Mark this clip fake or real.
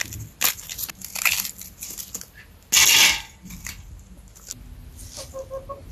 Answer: real